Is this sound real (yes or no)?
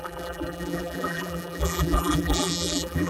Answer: no